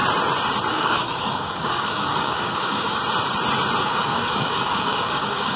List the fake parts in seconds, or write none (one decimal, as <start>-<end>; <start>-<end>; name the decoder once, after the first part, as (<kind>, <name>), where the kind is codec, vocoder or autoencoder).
0.7-3.0 (codec, DAC); 3.8-5.6